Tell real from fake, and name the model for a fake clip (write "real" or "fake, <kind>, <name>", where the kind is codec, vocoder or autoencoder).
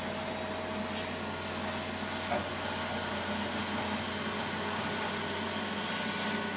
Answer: real